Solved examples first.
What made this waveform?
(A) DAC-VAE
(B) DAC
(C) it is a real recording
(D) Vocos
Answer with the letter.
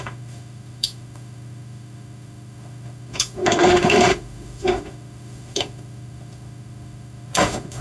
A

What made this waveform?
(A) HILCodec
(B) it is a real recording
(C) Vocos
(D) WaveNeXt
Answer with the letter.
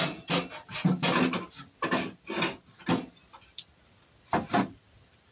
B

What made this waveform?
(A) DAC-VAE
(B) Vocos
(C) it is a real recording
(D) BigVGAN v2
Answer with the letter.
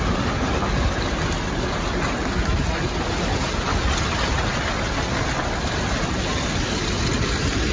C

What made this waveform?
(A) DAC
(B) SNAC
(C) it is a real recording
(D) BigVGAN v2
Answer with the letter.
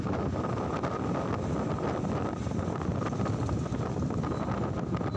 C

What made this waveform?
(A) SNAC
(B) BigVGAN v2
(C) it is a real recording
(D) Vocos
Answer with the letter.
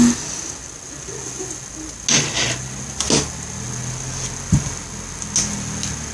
C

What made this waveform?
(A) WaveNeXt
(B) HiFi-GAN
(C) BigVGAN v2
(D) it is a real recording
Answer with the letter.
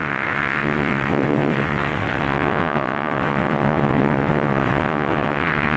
A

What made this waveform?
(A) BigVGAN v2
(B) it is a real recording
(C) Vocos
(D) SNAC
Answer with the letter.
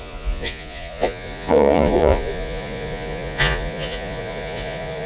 C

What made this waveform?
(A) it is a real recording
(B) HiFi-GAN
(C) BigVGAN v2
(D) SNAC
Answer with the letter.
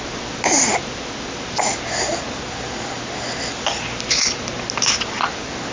A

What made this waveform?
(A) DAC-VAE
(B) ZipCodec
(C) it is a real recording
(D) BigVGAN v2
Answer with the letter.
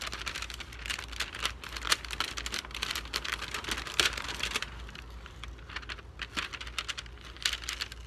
C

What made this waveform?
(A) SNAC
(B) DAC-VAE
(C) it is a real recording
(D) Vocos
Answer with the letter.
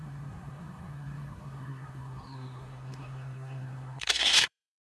A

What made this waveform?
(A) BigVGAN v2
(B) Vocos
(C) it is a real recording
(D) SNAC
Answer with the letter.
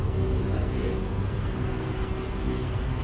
D